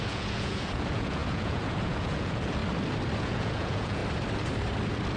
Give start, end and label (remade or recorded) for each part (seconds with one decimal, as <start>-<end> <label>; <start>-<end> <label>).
0.0-2.6 remade; 2.6-3.2 recorded; 3.2-4.0 remade; 4.0-5.2 recorded